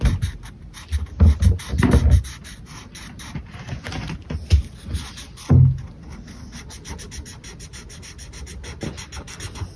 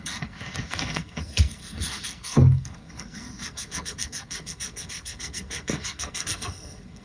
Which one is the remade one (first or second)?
second